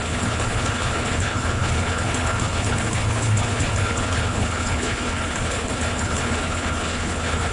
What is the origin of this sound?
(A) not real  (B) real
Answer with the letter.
A